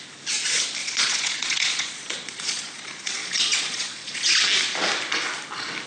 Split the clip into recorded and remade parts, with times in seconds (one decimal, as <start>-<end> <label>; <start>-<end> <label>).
0.0-0.8 recorded; 0.8-4.3 remade; 4.3-5.9 recorded

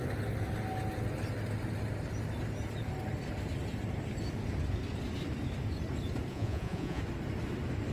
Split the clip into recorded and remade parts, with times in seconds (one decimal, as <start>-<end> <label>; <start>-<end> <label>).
0.0-6.3 recorded; 6.3-7.0 remade; 7.0-7.9 recorded